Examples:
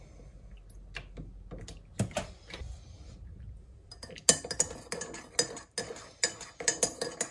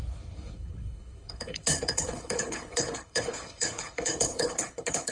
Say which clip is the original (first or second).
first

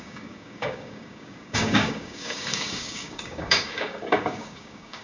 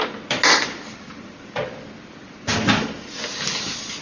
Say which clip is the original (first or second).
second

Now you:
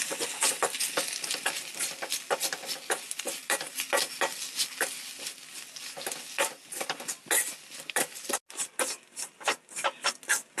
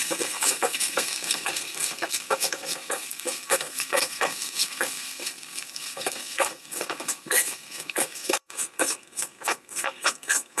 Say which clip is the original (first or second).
first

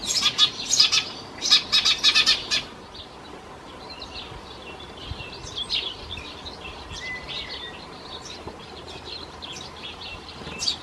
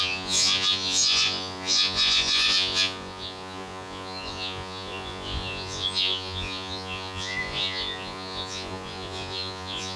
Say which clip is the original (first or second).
first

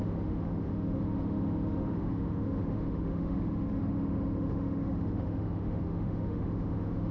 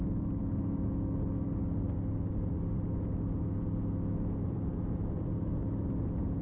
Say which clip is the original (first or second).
second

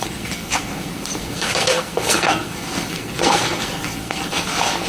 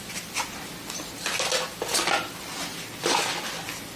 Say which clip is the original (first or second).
second